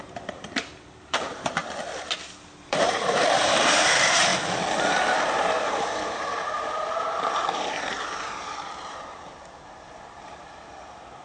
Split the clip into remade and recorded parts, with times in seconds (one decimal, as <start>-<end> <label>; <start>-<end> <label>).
0.0-1.6 remade; 1.6-2.6 recorded; 2.6-4.3 remade; 4.3-5.7 recorded; 5.7-11.2 remade